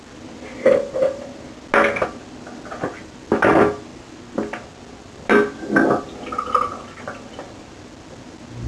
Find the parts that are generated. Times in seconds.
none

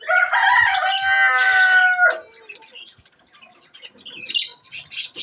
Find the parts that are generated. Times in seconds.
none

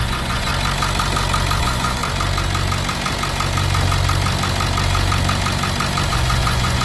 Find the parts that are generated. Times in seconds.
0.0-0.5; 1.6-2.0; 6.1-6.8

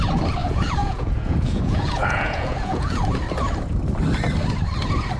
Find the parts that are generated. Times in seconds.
0.4-3.0